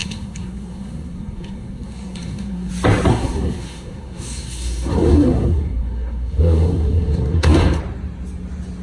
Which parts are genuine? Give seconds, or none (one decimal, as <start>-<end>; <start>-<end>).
2.7-3.1; 7.8-8.8